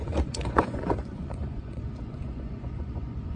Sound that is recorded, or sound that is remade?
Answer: remade